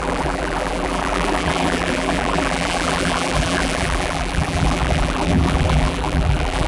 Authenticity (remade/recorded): remade